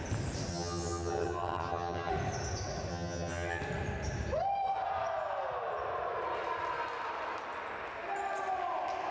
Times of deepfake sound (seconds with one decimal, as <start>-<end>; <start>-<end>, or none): 0.5-2.1; 2.9-3.6